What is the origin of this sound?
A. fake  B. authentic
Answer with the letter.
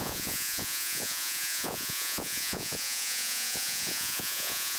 A